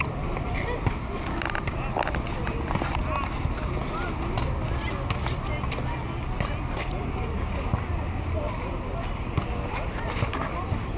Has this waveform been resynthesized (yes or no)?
no